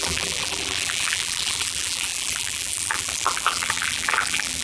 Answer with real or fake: fake